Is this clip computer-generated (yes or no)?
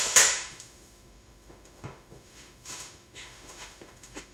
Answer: yes